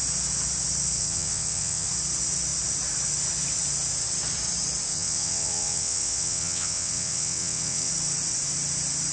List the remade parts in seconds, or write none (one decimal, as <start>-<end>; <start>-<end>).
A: 1.0-1.9; 4.9-7.9